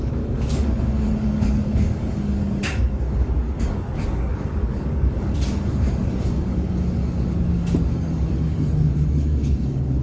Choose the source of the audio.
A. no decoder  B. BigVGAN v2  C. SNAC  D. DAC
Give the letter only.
D